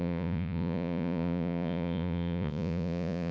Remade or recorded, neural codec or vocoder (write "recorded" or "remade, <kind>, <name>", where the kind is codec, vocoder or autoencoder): remade, vocoder, Vocos